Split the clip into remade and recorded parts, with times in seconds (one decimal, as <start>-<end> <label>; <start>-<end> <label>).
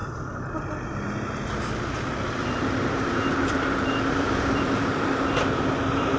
0.0-2.4 recorded; 2.4-6.2 remade